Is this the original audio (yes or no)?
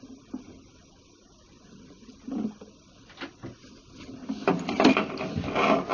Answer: yes